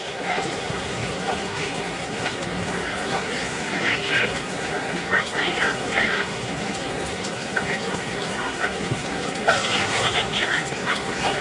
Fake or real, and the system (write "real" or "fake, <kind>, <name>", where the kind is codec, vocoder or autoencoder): fake, codec, SNAC